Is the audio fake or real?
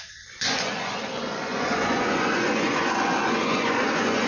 fake